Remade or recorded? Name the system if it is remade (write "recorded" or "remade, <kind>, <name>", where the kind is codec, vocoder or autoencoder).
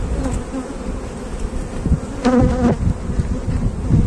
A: recorded